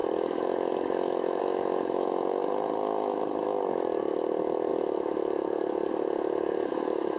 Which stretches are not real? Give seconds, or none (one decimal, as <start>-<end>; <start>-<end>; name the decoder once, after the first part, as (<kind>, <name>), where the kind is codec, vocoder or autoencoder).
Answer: 0.0-7.2 (autoencoder, DAC-VAE)